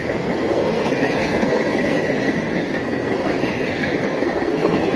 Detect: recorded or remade remade